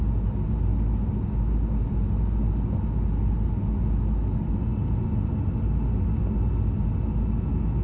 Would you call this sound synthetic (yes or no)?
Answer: no